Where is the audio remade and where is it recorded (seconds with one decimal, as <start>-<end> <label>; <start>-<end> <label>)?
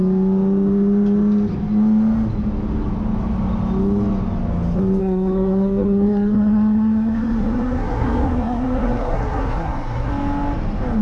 0.0-5.0 recorded; 5.0-10.1 remade; 10.1-11.0 recorded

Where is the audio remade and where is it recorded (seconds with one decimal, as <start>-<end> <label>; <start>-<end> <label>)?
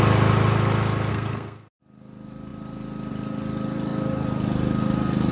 0.0-1.1 recorded; 1.1-1.7 remade; 1.7-5.3 recorded